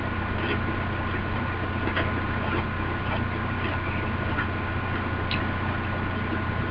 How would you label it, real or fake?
real